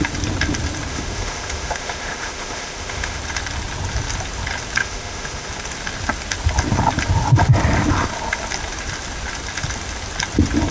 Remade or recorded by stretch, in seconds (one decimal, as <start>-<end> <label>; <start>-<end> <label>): 0.0-0.9 recorded; 0.9-3.2 remade; 3.2-4.8 recorded; 4.8-5.5 remade; 5.5-10.7 recorded